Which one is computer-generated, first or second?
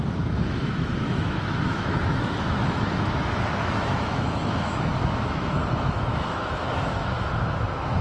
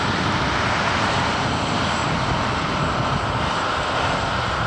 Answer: first